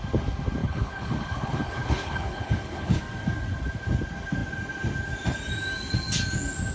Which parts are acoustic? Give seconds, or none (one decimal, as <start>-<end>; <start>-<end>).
0.0-0.6; 3.0-6.7